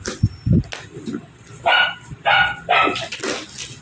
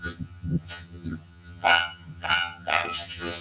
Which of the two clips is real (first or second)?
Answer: first